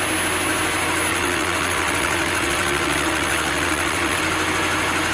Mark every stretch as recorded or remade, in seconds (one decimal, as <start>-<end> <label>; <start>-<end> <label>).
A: 0.0-1.1 recorded; 1.1-4.2 remade; 4.2-5.1 recorded